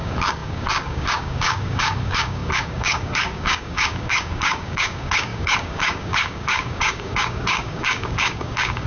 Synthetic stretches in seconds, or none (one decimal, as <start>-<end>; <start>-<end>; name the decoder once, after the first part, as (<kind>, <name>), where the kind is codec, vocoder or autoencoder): 0.0-8.9 (codec, DAC)